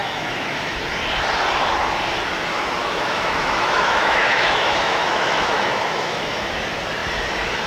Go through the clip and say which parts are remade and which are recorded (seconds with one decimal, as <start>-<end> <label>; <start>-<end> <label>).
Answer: 0.0-0.8 remade; 0.8-2.8 recorded; 2.8-6.5 remade; 6.5-7.7 recorded